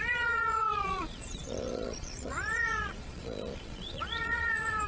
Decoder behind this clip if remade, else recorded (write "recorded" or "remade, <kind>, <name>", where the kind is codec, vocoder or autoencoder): remade, vocoder, Vocos